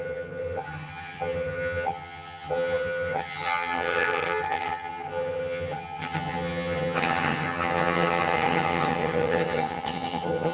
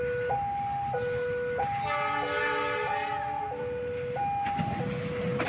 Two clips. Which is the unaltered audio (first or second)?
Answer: second